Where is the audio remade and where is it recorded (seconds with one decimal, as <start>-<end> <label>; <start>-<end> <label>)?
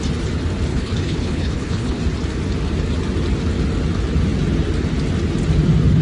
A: 0.0-0.7 recorded; 0.7-2.0 remade; 2.0-6.0 recorded